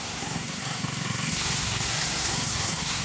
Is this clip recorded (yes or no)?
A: no